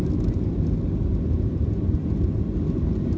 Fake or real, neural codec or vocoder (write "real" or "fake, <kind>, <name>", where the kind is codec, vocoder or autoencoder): real